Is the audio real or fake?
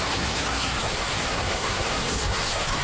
fake